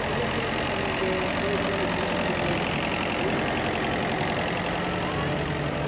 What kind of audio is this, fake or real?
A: real